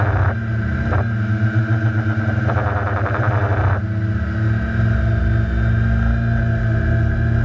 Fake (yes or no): no